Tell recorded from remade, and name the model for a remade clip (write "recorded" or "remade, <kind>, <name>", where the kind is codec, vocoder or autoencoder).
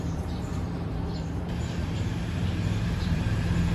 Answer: remade, vocoder, BigVGAN v2